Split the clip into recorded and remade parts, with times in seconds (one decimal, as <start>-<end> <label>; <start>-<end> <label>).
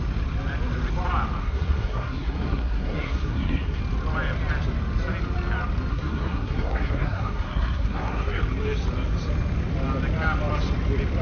0.0-1.4 recorded; 1.4-3.8 remade; 3.8-5.9 recorded; 5.9-8.4 remade; 8.4-11.2 recorded